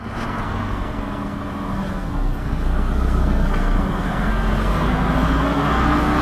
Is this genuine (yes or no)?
no